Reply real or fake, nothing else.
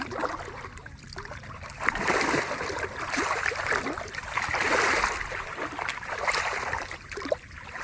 real